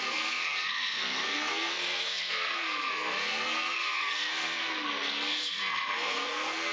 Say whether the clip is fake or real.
fake